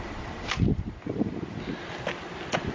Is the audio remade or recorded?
recorded